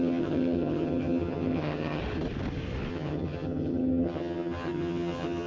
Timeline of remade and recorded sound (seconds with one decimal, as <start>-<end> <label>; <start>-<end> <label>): 0.0-2.0 remade; 2.0-2.9 recorded; 2.9-5.5 remade